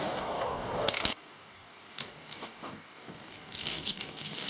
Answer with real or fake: fake